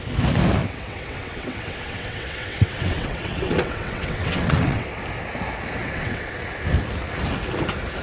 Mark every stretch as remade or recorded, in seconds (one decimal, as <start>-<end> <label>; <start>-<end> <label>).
0.0-0.6 recorded; 0.6-5.0 remade; 5.0-5.8 recorded; 5.8-6.4 remade; 6.4-8.0 recorded